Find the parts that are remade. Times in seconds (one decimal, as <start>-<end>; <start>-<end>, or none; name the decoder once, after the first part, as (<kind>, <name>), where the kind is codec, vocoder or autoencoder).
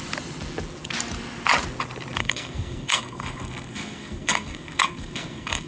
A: 2.2-5.7 (codec, SNAC)